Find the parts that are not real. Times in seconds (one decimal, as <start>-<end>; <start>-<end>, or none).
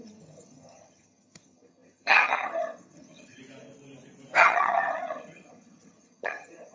0.0-3.4; 4.4-6.7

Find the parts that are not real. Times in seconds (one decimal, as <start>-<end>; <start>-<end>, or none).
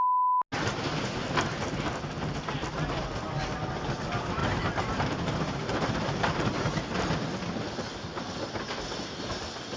none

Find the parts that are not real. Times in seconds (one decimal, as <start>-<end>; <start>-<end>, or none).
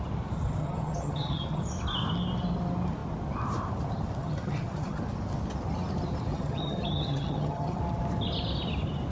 0.6-1.6; 4.2-5.0; 6.3-7.8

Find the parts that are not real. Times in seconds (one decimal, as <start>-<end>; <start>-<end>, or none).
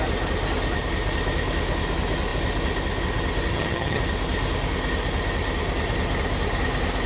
3.5-4.0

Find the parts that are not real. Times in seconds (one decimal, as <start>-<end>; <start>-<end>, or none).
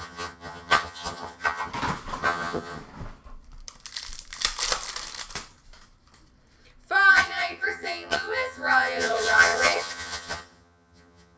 0.0-1.7; 2.2-2.8; 7.1-11.4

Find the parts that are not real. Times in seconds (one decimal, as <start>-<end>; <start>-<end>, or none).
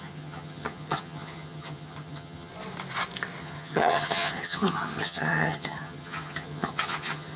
0.0-2.5; 3.4-7.4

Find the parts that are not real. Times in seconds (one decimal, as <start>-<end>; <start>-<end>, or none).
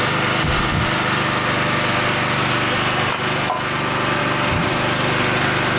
none